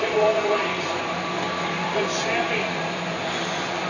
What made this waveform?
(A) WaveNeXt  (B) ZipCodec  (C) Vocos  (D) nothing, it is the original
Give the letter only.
C